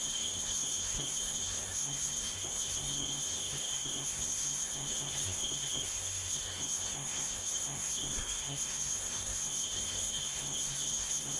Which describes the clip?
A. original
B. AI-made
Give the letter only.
B